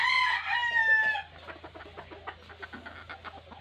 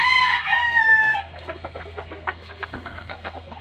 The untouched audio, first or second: first